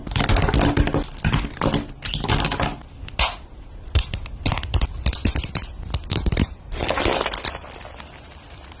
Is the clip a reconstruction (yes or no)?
no